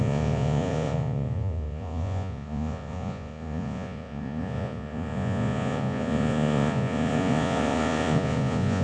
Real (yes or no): no